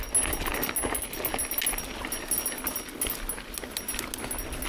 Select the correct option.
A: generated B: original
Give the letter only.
B